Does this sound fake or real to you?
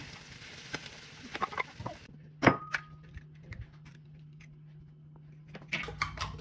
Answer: real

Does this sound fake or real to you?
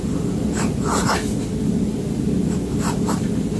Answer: real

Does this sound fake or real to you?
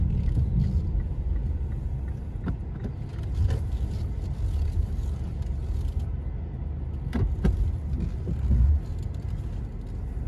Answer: real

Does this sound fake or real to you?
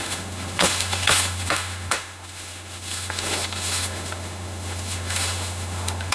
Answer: fake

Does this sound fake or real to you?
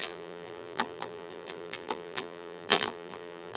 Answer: fake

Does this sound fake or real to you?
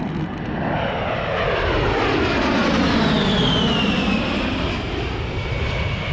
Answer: real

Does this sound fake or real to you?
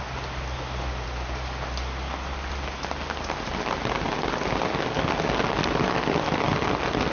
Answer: real